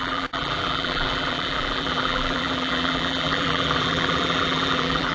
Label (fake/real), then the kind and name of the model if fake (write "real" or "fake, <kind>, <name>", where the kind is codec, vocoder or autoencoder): fake, vocoder, BigVGAN v2